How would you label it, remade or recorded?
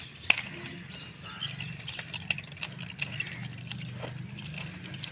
recorded